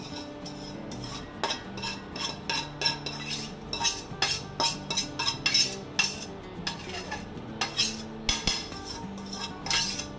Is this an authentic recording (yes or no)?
yes